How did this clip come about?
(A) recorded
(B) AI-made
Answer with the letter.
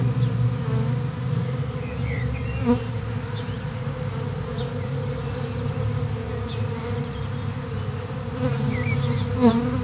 A